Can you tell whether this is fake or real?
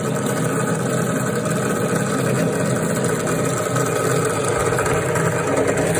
real